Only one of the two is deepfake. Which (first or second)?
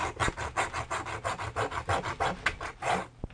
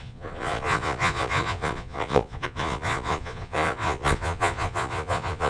second